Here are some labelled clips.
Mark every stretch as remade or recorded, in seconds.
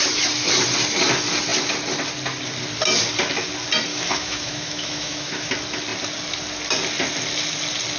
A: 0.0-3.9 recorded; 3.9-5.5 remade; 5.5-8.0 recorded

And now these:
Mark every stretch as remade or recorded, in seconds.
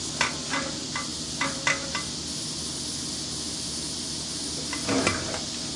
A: 0.0-5.8 recorded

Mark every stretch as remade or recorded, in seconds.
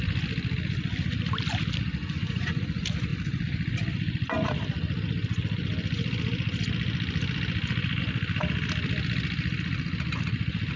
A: 0.0-2.0 recorded; 2.0-2.6 remade; 2.6-10.8 recorded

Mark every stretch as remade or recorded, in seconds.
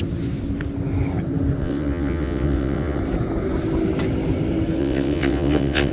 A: 0.0-1.6 recorded; 1.6-3.0 remade; 3.0-4.8 recorded; 4.8-5.9 remade